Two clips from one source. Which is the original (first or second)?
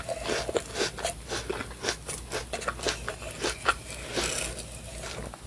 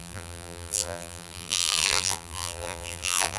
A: first